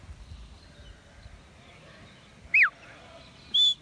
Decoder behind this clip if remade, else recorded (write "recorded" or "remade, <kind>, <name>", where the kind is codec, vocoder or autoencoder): recorded